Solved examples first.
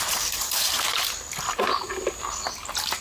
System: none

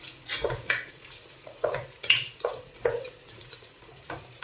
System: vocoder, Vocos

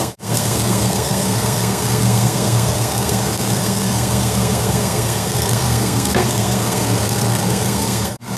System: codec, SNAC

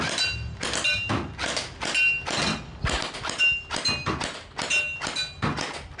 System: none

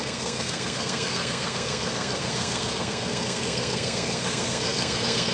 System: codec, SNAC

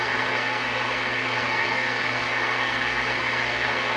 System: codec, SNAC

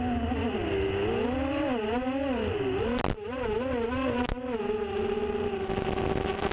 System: none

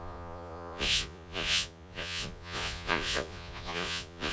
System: vocoder, Vocos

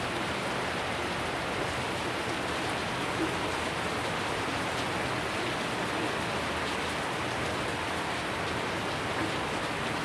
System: none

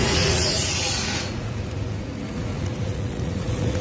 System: vocoder, Vocos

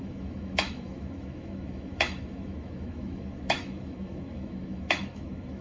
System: autoencoder, DAC-VAE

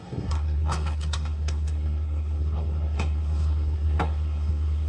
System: codec, SNAC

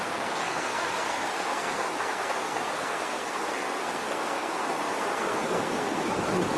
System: codec, SNAC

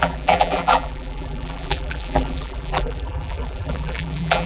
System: vocoder, BigVGAN v2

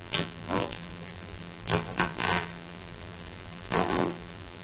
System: vocoder, BigVGAN v2